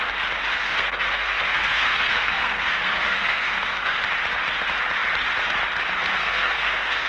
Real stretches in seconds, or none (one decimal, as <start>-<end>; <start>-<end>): 0.0-0.5; 4.0-6.2